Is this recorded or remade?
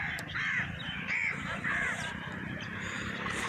remade